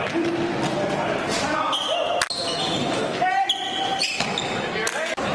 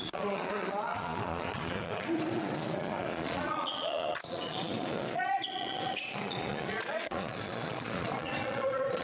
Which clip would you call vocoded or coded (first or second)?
second